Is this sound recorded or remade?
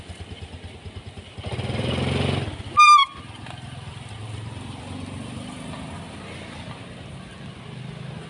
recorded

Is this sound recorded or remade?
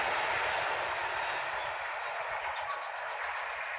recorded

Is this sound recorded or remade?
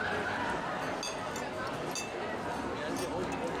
recorded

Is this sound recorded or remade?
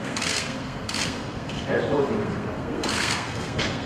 remade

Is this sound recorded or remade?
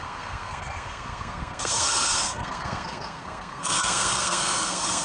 remade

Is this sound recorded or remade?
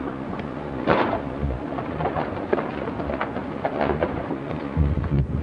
remade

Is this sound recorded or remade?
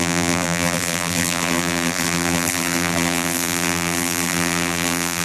remade